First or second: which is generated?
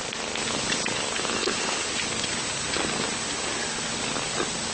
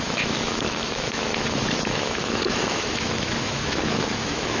second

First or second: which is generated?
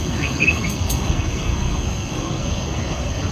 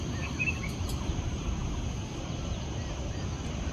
first